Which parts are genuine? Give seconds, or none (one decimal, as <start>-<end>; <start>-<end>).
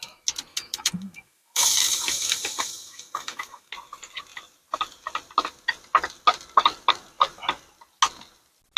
0.0-0.5; 3.7-8.8